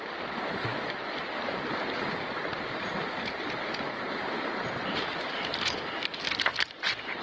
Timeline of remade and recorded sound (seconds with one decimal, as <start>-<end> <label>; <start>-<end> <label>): 0.0-7.2 recorded